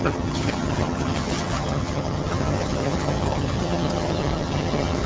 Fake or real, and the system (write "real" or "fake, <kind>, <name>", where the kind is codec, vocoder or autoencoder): fake, vocoder, HiFi-GAN